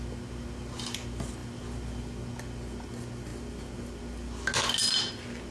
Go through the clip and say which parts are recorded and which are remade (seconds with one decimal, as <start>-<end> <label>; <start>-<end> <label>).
0.0-5.5 recorded

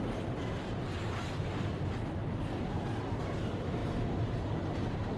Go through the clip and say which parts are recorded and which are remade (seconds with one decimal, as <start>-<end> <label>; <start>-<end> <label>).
0.0-1.5 remade; 1.5-3.2 recorded; 3.2-3.8 remade; 3.8-5.2 recorded

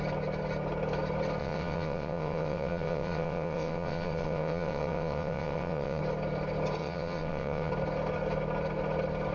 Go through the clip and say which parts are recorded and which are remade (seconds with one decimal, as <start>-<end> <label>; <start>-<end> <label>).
0.0-1.4 recorded; 1.4-6.0 remade; 6.0-6.8 recorded; 6.8-7.7 remade; 7.7-9.3 recorded

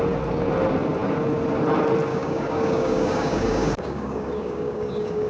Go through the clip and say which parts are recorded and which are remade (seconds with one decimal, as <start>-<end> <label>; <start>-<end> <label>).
0.0-2.1 recorded; 2.1-5.3 remade

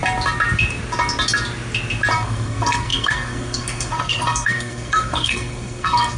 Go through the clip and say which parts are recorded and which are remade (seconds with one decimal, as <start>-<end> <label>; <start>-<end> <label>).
0.0-2.1 recorded; 2.1-6.2 remade